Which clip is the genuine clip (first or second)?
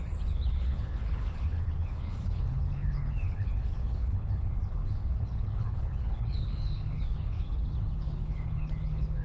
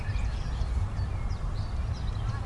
second